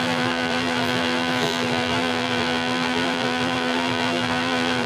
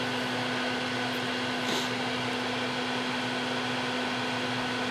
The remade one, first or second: first